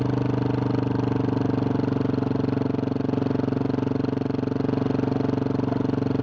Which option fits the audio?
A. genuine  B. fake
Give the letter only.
A